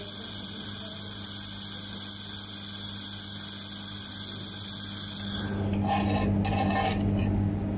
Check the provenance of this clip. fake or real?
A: real